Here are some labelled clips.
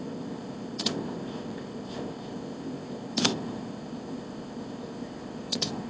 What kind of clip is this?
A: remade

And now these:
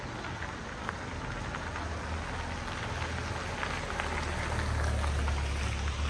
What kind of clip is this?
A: recorded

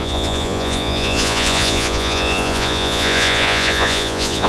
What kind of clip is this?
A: remade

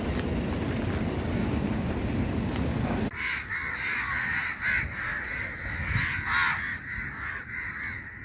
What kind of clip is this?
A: recorded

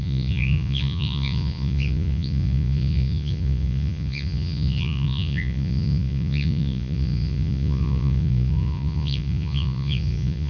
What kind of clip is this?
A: remade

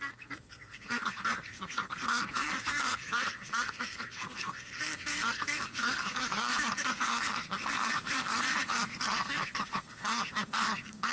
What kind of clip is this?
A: remade